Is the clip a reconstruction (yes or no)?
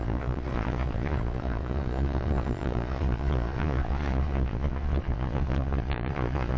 yes